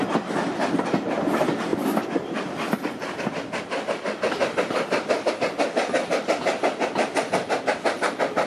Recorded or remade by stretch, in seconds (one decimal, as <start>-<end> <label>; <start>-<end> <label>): 0.0-1.7 recorded; 1.7-5.3 remade; 5.3-8.5 recorded